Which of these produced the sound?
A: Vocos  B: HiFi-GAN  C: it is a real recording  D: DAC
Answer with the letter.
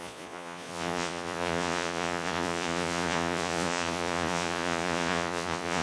A